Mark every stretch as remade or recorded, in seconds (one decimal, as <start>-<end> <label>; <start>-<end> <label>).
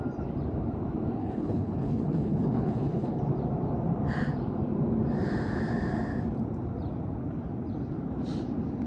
0.0-1.2 recorded; 1.2-3.2 remade; 3.2-8.9 recorded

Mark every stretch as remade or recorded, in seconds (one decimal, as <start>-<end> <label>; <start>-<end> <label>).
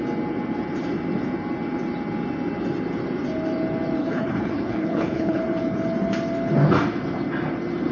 0.0-4.0 recorded; 4.0-5.4 remade; 5.4-7.9 recorded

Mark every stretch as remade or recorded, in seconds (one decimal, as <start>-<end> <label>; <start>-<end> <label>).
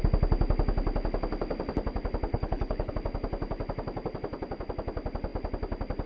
0.0-2.3 recorded; 2.3-2.9 remade; 2.9-6.1 recorded